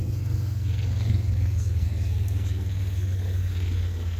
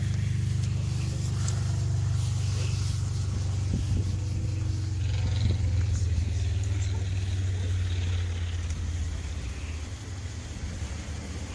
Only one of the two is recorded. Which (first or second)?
second